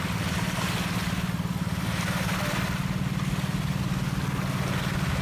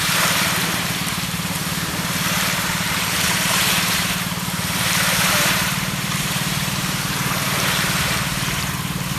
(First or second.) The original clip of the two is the first